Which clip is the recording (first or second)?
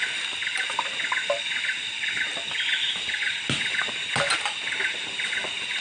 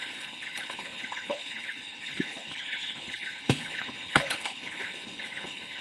first